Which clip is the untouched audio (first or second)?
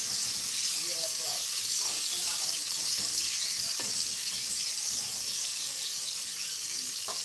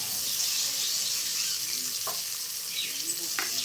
second